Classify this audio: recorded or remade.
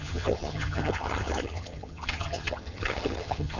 remade